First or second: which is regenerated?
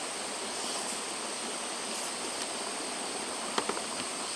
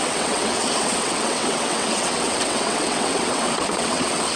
second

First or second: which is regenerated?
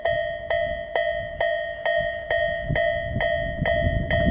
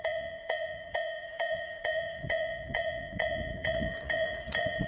second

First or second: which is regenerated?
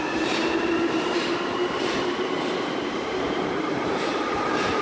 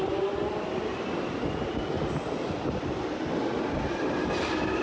first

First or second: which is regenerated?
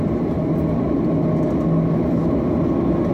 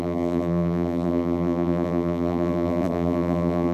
second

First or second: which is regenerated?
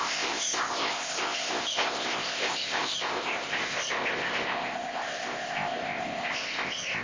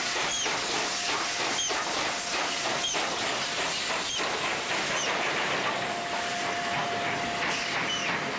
first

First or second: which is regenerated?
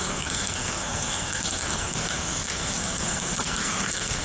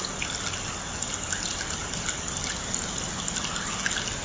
first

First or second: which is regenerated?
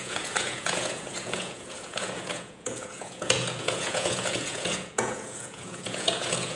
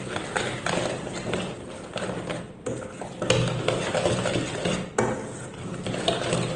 first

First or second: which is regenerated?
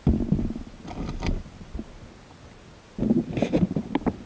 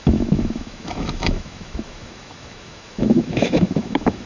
second